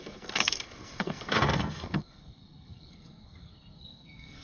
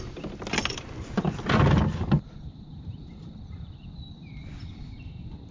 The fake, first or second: first